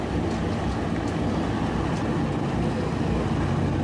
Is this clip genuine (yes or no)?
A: yes